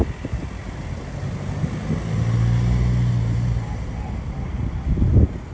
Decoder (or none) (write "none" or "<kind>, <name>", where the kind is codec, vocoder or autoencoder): none